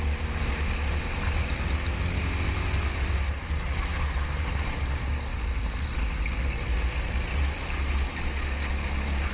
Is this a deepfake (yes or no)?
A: no